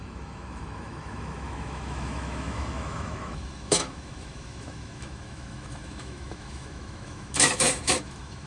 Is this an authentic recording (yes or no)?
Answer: no